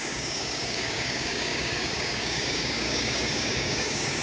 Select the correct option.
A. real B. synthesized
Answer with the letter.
B